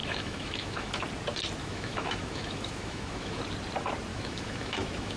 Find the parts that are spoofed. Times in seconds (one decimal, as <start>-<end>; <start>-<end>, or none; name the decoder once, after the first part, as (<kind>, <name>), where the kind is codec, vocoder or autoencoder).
0.0-0.9 (autoencoder, DAC-VAE); 1.6-3.4; 4.1-5.2